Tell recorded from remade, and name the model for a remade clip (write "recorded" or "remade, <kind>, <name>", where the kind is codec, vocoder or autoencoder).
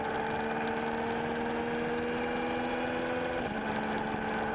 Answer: recorded